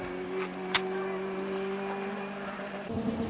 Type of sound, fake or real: real